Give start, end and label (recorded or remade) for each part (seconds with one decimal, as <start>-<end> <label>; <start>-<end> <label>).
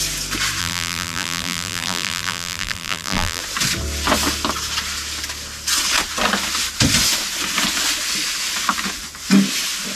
0.0-0.6 recorded; 0.6-3.4 remade; 3.4-10.0 recorded